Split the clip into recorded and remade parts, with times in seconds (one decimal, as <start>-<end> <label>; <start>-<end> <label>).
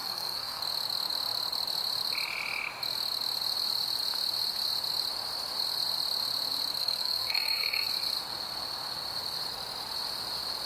0.0-0.6 remade; 0.6-6.8 recorded; 6.8-7.9 remade; 7.9-10.7 recorded